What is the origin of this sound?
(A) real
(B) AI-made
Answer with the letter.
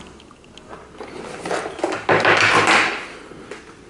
A